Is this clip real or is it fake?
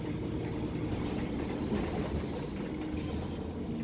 real